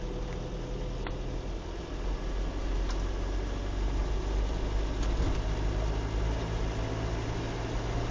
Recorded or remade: recorded